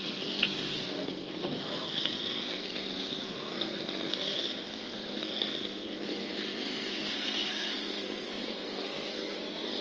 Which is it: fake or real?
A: fake